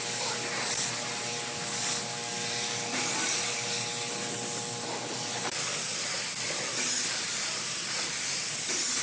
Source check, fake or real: real